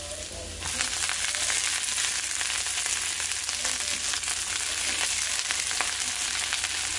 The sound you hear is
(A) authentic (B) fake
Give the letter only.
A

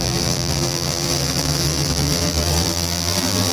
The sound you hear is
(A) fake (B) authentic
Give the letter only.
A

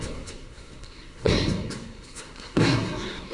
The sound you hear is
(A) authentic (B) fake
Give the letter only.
B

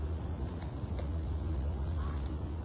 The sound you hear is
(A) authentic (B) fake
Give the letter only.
B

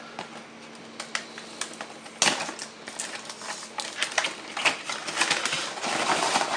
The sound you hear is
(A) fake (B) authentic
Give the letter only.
B